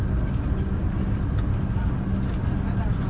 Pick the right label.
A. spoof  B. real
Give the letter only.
B